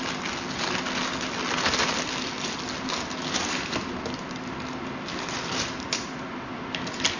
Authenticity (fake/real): real